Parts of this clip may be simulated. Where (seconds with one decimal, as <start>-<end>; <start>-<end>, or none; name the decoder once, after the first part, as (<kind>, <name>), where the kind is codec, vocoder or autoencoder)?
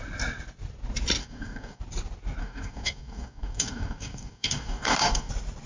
1.2-1.8 (codec, DAC); 2.4-5.3